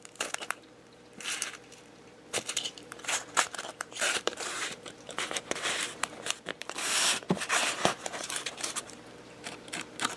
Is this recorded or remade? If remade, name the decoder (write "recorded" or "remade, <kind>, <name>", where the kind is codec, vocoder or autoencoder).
remade, vocoder, BigVGAN v2